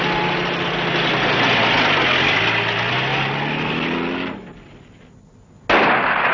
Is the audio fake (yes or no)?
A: no